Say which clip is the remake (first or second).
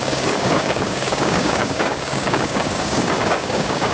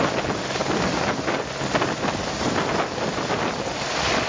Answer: first